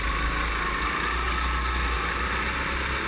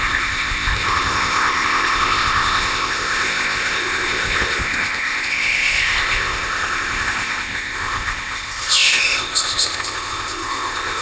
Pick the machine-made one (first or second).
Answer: second